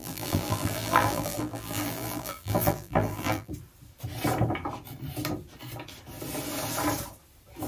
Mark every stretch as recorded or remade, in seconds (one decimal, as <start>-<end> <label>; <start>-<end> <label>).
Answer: 0.0-3.5 remade; 3.5-7.7 recorded